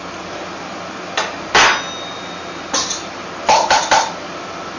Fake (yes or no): no